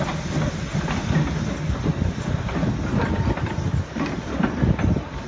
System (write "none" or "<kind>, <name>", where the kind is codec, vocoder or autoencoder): none